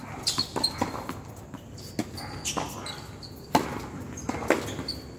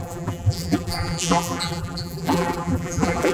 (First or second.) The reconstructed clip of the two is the second